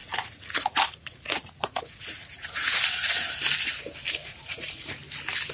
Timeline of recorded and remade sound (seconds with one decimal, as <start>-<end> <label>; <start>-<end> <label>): 0.0-3.3 remade; 3.3-4.2 recorded; 4.2-5.0 remade; 5.0-5.5 recorded